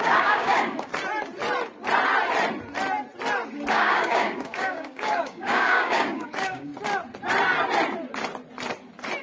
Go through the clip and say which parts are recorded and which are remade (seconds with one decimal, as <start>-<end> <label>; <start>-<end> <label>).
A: 0.0-0.9 remade; 0.9-3.7 recorded; 3.7-6.7 remade; 6.7-9.2 recorded